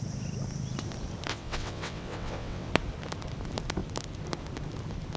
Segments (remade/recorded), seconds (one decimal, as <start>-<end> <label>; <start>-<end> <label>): 0.0-1.3 recorded; 1.3-2.7 remade; 2.7-5.2 recorded